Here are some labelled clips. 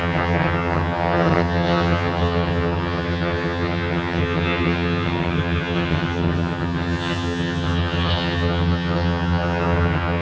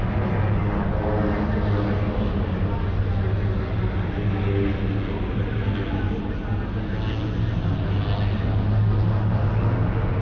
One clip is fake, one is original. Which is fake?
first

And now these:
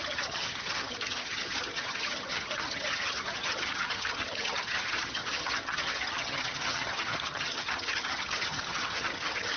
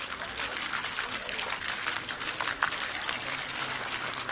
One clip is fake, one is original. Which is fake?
first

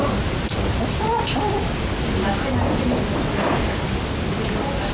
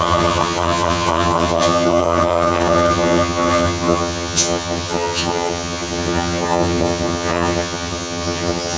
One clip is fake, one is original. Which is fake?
second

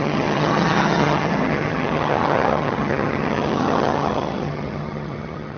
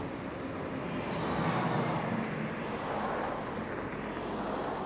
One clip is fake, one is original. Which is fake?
first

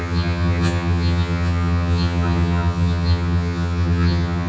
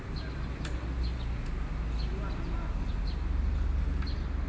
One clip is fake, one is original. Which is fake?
first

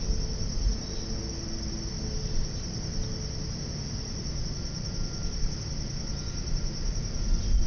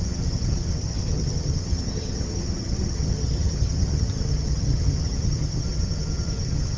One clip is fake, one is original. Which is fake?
second